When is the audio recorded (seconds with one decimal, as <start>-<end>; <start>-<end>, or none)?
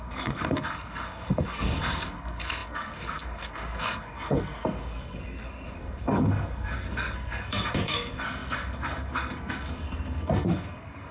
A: none